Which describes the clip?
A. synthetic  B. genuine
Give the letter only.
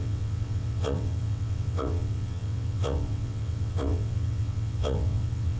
A